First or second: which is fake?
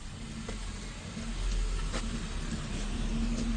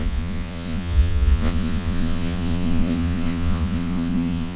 second